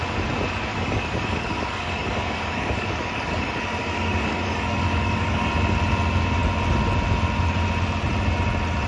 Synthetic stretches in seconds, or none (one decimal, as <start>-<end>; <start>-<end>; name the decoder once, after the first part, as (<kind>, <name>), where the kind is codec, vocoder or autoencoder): 0.7-5.5 (codec, DAC)